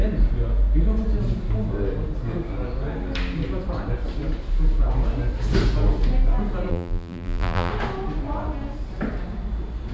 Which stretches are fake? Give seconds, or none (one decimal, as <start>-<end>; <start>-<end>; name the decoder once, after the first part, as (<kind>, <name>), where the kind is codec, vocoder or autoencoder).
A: 6.7-7.7 (vocoder, BigVGAN v2)